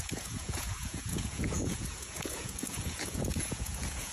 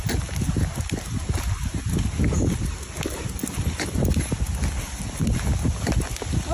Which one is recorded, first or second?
second